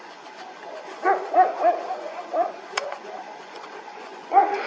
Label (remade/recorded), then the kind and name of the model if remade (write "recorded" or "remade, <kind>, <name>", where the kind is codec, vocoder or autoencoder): remade, vocoder, Vocos